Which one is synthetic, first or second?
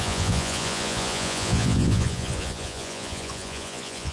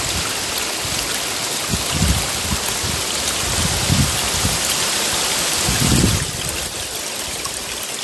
first